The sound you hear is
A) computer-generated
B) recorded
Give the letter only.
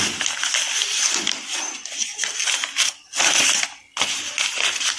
B